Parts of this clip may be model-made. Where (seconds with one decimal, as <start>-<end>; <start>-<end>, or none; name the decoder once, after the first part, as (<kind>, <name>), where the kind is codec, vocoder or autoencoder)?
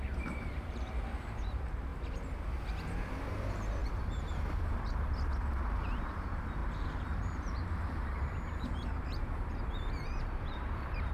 0.0-1.9 (vocoder, BigVGAN v2); 3.1-11.1